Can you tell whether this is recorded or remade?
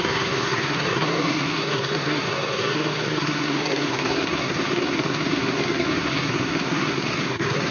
remade